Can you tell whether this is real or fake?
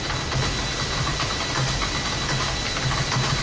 real